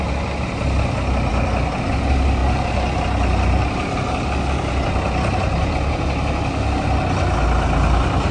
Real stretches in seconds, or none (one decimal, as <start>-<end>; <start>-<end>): 0.0-8.3